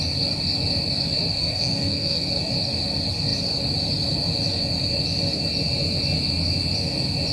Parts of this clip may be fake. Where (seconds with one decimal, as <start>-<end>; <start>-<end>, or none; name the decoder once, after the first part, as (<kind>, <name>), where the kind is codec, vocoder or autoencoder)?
1.4-2.3 (codec, SNAC)

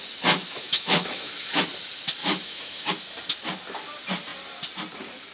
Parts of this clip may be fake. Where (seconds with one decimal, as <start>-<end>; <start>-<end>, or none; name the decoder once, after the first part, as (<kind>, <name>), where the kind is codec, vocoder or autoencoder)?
0.4-1.6 (autoencoder, DAC-VAE); 2.2-2.9

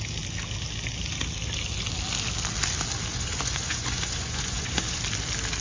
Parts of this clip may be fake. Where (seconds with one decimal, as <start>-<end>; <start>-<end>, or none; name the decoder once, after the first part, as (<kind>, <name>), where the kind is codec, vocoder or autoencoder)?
3.1-5.0 (vocoder, Vocos)

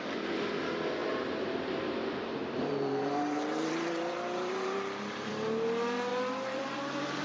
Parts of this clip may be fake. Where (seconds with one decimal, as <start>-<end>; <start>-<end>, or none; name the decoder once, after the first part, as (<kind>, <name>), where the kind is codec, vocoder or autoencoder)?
1.0-5.3 (vocoder, BigVGAN v2); 6.1-7.2